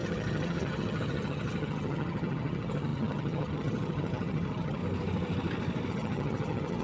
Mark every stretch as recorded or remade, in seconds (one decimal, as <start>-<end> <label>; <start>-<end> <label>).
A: 0.0-4.8 remade; 4.8-5.9 recorded; 5.9-6.8 remade